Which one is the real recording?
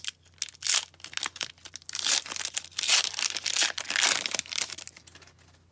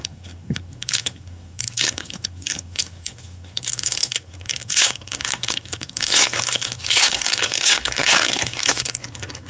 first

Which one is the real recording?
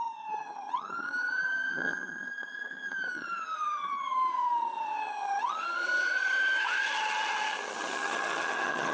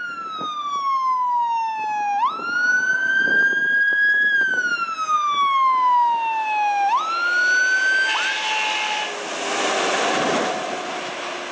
second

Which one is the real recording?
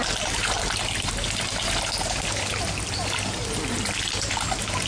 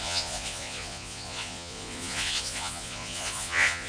first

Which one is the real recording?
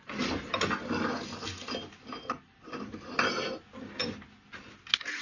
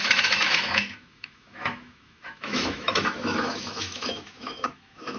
first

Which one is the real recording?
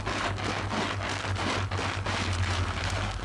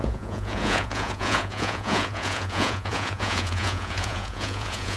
first